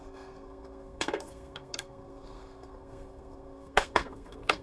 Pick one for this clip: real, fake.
fake